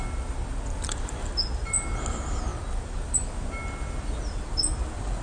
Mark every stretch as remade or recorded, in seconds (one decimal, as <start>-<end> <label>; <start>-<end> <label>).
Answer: 0.0-5.2 recorded